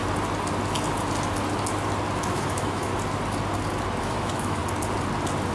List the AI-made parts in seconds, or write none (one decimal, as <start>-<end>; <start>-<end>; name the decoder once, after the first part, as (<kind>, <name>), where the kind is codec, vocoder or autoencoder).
2.3-2.9 (autoencoder, DAC-VAE); 4.0-4.6

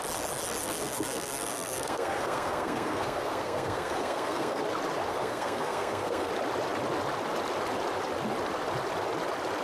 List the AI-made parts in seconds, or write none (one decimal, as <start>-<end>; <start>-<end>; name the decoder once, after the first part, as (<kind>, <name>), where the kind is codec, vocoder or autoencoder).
0.6-4.6 (codec, SNAC); 5.1-6.3

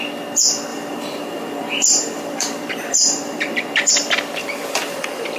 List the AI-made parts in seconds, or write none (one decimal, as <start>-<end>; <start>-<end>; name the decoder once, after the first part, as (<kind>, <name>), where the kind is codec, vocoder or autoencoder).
0.7-3.9 (vocoder, BigVGAN v2); 4.4-5.0

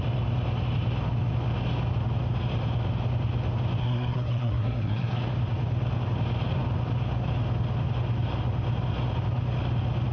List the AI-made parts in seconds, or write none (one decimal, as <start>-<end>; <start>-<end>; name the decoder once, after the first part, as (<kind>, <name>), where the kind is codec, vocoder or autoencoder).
3.8-5.2 (codec, SNAC)

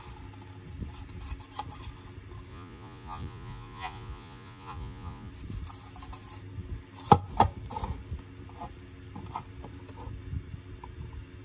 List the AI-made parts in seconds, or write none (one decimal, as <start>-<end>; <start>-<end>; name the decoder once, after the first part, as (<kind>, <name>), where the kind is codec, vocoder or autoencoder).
2.5-5.3 (vocoder, Vocos)

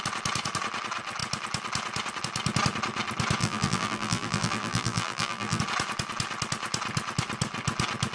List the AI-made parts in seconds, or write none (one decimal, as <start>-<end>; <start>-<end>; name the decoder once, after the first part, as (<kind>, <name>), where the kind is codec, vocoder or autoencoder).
3.4-5.6 (vocoder, BigVGAN v2)

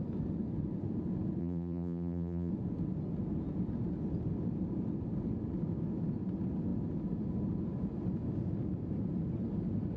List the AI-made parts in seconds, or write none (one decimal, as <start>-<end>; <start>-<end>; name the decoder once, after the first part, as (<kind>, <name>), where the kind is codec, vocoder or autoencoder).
1.4-2.5 (vocoder, BigVGAN v2)